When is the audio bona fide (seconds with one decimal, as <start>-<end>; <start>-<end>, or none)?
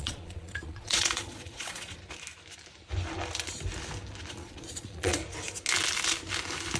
2.0-4.3; 5.2-6.8